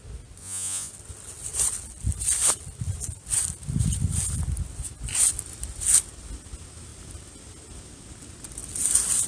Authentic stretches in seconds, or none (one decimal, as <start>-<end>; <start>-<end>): 0.0-0.4; 0.9-9.3